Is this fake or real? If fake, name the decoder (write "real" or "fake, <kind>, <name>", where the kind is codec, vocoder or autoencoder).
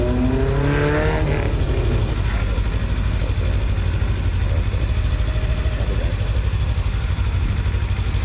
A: real